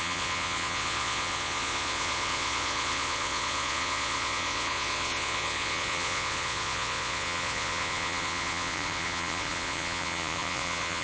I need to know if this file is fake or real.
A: fake